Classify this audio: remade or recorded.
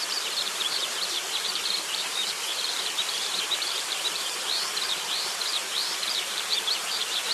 remade